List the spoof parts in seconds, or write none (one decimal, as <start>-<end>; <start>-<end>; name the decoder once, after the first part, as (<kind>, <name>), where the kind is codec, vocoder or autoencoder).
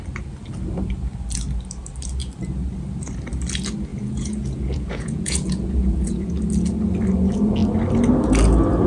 3.9-6.5 (vocoder, Vocos)